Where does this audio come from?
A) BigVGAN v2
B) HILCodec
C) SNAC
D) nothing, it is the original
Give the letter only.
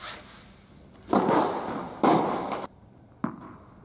D